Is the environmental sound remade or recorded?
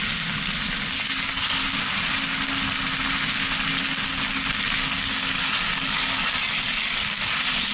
recorded